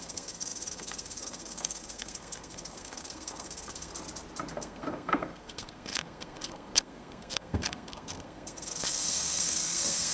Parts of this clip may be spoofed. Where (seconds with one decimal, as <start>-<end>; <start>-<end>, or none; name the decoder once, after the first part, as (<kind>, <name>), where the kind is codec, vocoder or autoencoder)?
0.0-3.9 (codec, SNAC); 4.5-10.1